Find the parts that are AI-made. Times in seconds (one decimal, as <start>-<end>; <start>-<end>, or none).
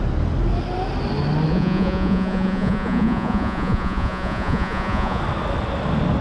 1.5-5.2